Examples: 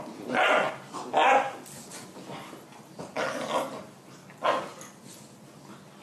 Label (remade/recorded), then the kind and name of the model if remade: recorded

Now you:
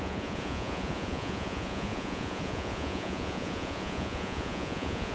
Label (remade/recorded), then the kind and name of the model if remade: remade, vocoder, Vocos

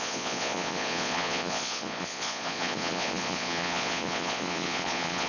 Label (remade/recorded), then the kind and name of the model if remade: remade, vocoder, Vocos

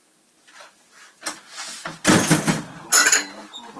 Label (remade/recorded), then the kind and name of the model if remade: recorded